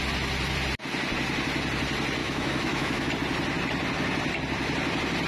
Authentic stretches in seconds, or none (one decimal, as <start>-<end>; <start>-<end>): 0.0-2.2; 3.1-5.3